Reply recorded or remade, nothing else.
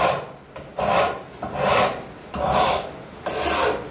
recorded